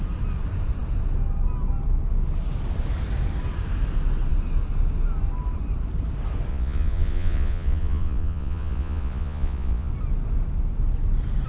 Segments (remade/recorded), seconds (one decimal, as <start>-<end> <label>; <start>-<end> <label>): 0.0-6.5 recorded; 6.5-9.9 remade; 9.9-11.5 recorded